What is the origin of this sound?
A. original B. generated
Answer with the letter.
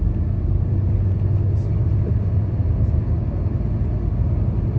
A